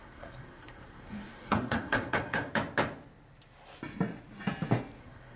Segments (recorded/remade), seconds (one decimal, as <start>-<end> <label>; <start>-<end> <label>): 0.0-2.5 remade; 2.5-5.0 recorded; 5.0-5.4 remade